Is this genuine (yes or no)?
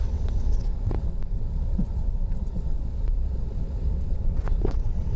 no